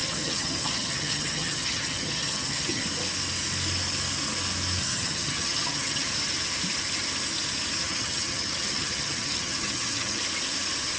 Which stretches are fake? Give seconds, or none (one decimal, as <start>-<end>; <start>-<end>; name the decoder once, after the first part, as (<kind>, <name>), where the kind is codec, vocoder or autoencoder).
0.0-2.8 (vocoder, HiFi-GAN); 4.8-6.1; 7.8-10.2